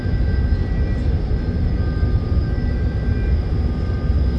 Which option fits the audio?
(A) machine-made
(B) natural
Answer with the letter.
B